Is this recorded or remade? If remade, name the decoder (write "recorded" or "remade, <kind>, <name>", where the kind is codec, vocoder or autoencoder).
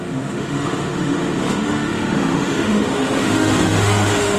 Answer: remade, autoencoder, DAC-VAE